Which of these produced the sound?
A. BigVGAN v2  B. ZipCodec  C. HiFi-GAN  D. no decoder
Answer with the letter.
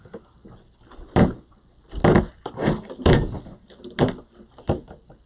D